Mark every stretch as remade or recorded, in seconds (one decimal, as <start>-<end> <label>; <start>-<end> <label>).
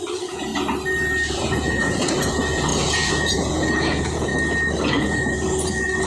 0.0-0.5 remade; 0.5-1.3 recorded; 1.3-4.3 remade; 4.3-4.9 recorded; 4.9-6.1 remade